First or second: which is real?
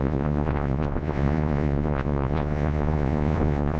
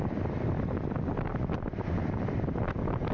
second